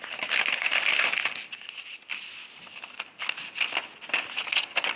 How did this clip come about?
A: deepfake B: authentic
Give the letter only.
B